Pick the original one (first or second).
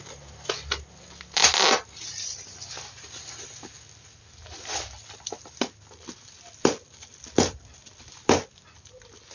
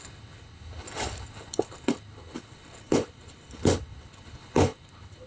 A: first